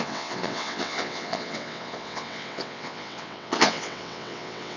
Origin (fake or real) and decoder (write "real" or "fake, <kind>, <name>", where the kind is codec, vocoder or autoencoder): fake, vocoder, WaveNeXt